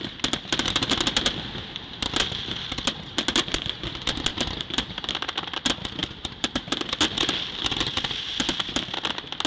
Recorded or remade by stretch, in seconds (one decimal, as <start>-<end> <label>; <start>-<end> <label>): 0.0-4.3 recorded; 4.3-5.1 remade; 5.1-6.0 recorded; 6.0-6.9 remade; 6.9-9.5 recorded